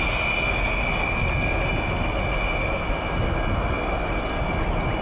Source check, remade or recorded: recorded